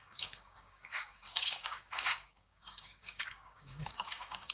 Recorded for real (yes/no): no